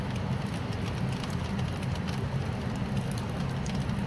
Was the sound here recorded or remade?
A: recorded